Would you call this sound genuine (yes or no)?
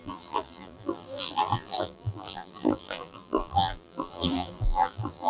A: no